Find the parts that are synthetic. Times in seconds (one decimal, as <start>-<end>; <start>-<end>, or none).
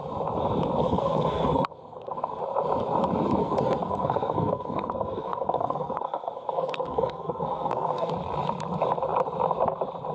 0.8-2.4; 3.4-8.1